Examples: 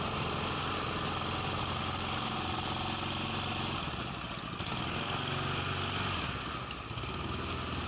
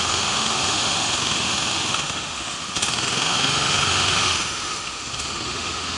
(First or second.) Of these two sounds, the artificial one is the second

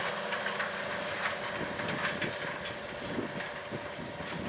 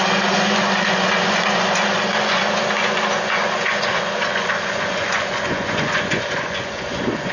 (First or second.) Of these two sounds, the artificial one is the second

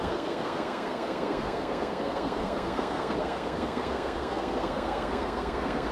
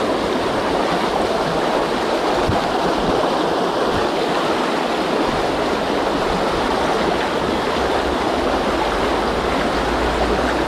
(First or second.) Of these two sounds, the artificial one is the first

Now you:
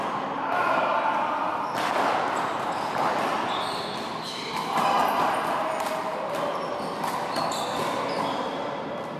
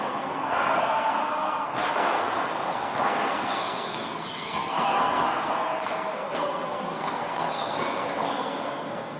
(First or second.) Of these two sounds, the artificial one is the second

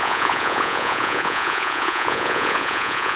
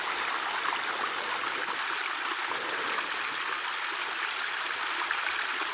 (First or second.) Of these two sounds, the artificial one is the first